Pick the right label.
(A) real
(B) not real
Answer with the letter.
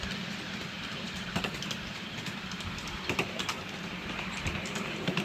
A